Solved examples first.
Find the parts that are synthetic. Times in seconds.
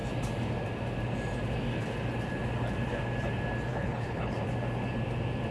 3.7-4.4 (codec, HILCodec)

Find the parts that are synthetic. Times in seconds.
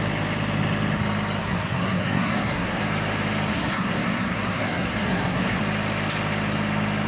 1.4-2.8 (codec, SNAC); 3.5-5.6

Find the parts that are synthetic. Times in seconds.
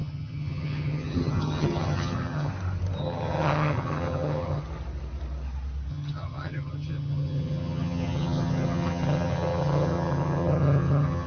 0.0-2.5 (vocoder, HiFi-GAN); 3.0-4.6; 5.9-11.3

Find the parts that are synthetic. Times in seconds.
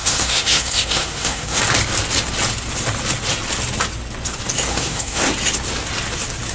0.0-1.6 (codec, SNAC); 4.7-5.3